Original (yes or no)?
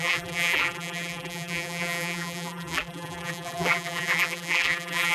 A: no